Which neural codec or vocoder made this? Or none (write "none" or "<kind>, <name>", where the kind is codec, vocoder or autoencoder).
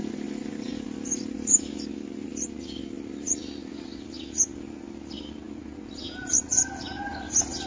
none